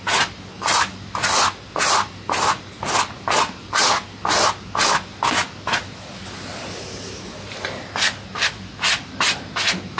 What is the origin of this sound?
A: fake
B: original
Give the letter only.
B